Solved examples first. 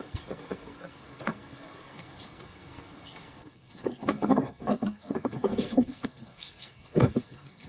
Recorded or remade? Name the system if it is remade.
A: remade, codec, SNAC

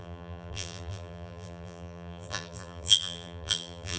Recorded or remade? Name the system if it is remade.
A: remade, vocoder, BigVGAN v2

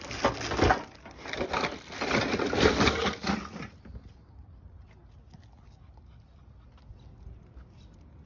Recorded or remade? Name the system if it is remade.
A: recorded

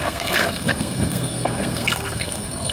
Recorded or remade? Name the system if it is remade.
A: remade, codec, SNAC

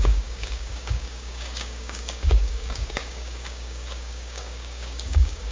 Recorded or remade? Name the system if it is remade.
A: remade, codec, DAC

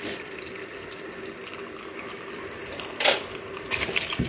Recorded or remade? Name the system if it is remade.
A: recorded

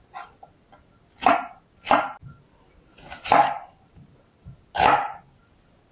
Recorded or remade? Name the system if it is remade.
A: recorded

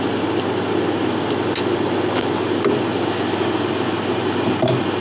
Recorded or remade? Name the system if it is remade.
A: recorded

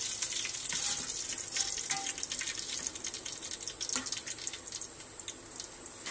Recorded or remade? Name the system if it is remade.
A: recorded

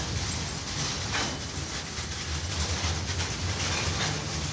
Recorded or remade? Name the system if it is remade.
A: recorded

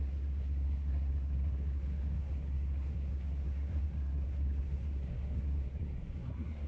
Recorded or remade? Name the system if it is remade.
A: remade, codec, SNAC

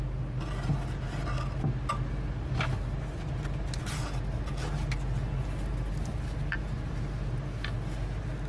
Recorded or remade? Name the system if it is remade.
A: recorded